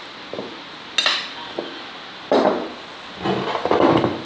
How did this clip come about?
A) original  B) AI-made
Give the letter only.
A